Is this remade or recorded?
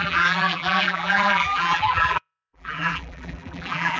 remade